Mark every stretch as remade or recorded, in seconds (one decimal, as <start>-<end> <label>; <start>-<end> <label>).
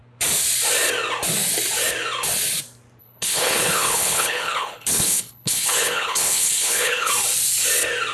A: 0.0-3.0 recorded; 3.0-7.1 remade; 7.1-8.1 recorded